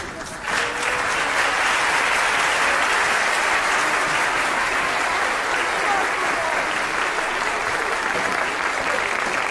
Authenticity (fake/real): real